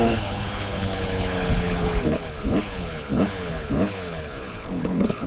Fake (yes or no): yes